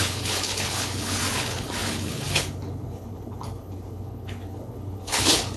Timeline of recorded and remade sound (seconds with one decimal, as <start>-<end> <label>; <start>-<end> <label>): 0.0-5.6 remade